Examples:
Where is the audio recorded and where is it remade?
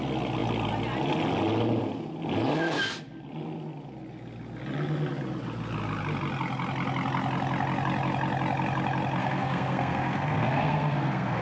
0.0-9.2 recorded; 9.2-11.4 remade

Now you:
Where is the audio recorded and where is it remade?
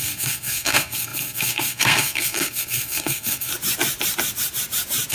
0.0-3.5 remade; 3.5-5.1 recorded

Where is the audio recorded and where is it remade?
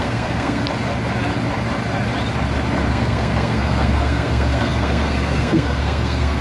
0.0-0.6 remade; 0.6-2.9 recorded; 2.9-6.4 remade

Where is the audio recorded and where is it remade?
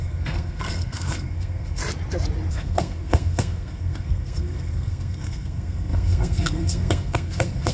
0.0-1.8 remade; 1.8-2.5 recorded; 2.5-7.7 remade